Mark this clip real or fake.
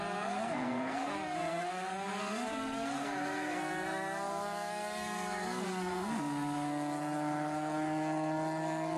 fake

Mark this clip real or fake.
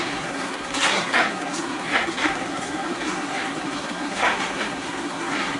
fake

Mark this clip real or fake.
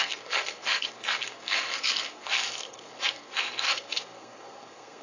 fake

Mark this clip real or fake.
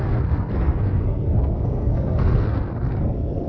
fake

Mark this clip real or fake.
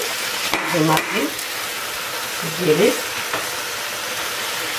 real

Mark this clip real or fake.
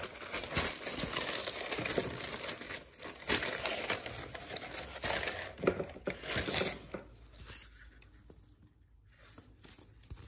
real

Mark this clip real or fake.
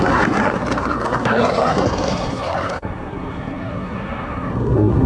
fake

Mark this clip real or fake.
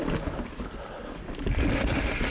real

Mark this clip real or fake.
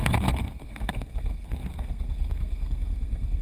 fake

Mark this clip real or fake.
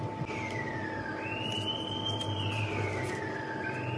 real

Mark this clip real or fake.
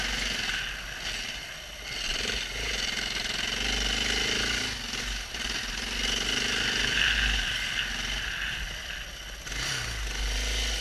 real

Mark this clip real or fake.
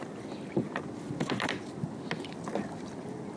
real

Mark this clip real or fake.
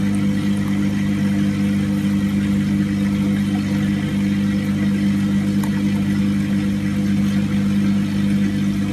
real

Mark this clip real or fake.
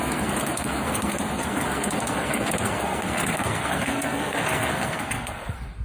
fake